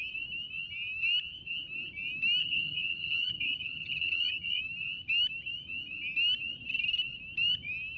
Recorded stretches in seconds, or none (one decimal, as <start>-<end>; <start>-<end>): 0.0-2.4; 4.6-8.0